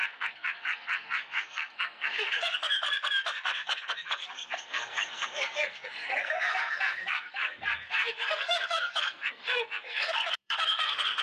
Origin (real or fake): fake